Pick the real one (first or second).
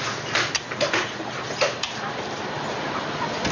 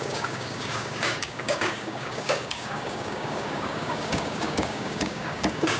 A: first